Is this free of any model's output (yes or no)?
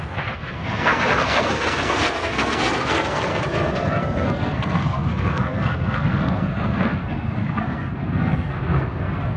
no